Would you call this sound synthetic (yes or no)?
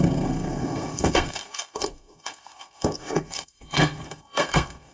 yes